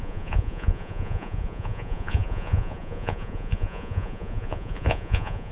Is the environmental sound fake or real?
fake